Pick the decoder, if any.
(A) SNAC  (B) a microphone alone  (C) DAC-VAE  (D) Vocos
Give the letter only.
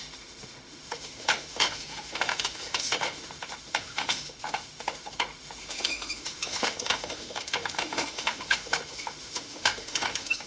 C